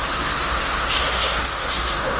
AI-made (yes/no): yes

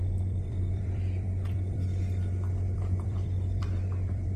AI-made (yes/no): yes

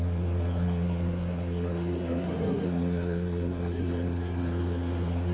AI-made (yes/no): yes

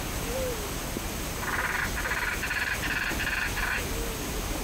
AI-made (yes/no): no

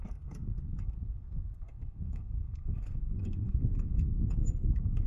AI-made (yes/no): yes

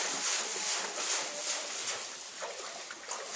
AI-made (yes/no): no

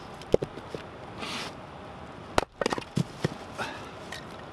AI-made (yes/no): no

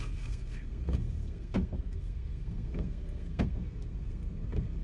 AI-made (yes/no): yes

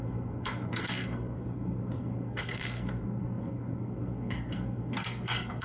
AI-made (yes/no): yes